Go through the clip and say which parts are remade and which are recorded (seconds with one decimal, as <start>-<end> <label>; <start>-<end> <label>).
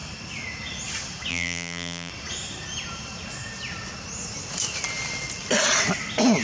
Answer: 0.0-1.3 recorded; 1.3-2.1 remade; 2.1-6.4 recorded